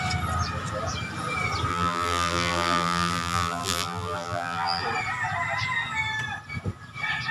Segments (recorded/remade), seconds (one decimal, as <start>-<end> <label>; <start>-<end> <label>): 0.0-1.7 recorded; 1.7-4.8 remade; 4.8-7.3 recorded